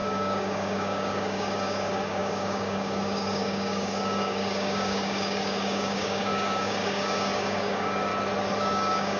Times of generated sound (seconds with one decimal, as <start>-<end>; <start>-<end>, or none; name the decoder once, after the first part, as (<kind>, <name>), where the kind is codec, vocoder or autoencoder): 0.0-8.1 (codec, DAC); 8.6-9.2

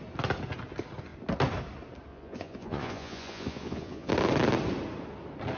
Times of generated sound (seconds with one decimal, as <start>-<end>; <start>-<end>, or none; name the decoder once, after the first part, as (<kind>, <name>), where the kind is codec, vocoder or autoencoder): 2.1-4.1 (vocoder, Vocos)

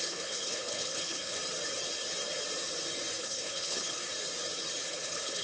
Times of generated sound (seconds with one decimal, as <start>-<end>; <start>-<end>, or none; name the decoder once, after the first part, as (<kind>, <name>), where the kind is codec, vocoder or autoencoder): 0.0-1.4 (codec, HILCodec); 3.2-4.0; 4.9-5.4

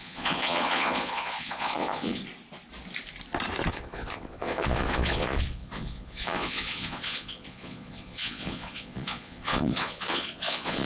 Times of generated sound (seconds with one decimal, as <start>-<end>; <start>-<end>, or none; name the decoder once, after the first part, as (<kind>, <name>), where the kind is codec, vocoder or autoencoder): 0.0-2.2 (vocoder, Vocos); 3.7-10.9

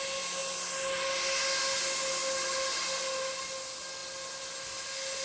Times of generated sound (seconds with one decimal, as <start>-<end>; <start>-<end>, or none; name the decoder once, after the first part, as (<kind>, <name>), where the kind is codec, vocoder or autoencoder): none

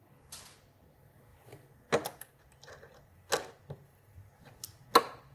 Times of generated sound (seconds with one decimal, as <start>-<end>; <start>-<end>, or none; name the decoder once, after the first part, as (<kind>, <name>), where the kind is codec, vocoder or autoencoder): none

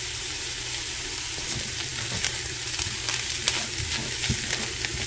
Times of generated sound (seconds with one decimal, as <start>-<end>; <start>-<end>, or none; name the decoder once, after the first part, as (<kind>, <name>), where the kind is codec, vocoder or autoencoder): none

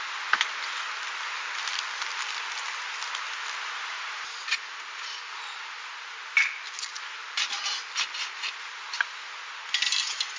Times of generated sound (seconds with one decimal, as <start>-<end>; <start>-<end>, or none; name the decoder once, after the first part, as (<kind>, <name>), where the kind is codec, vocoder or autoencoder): none